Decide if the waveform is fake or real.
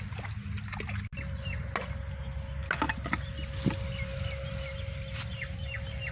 real